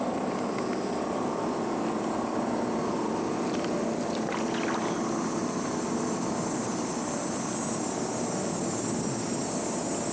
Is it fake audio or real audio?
real